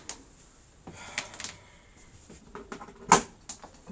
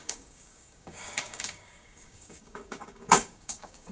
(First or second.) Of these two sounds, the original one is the first